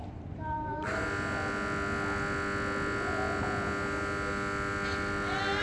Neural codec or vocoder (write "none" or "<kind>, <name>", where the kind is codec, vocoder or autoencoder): none